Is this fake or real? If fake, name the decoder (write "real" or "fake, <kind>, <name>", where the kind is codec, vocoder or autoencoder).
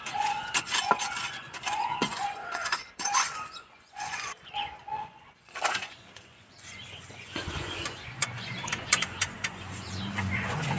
fake, vocoder, Vocos